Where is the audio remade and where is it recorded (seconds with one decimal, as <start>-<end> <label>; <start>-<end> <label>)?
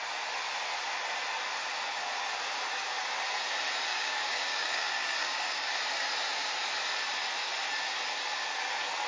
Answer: 0.0-3.9 recorded; 3.9-5.7 remade; 5.7-9.1 recorded